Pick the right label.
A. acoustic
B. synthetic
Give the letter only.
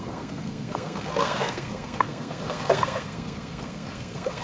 B